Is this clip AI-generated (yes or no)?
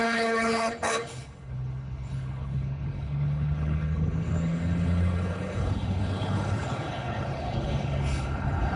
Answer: yes